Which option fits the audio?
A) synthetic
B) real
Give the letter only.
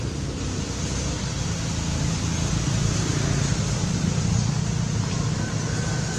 B